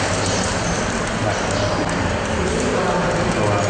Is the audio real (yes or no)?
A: yes